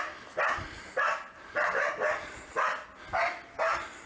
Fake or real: real